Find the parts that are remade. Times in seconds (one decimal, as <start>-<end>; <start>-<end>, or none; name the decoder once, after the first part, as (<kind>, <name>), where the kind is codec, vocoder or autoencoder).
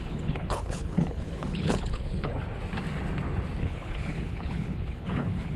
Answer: 0.0-2.3 (codec, HILCodec); 3.6-5.6